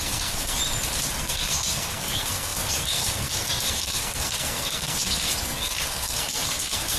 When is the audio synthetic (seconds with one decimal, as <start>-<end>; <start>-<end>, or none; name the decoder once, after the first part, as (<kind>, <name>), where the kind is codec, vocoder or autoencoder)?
0.0-0.6 (codec, SNAC); 1.2-7.0